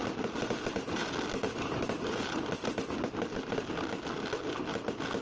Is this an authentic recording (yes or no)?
yes